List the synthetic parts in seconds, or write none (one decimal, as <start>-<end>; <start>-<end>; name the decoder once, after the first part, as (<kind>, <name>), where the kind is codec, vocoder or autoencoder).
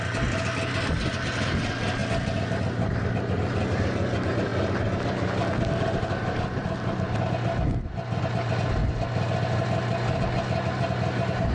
none